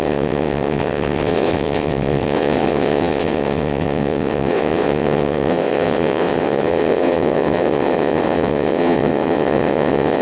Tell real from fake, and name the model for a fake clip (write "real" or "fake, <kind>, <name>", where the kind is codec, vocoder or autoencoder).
fake, vocoder, WaveNeXt